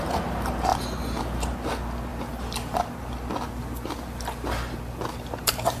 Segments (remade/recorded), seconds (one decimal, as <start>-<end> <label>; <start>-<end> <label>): 0.0-2.1 recorded; 2.1-5.8 remade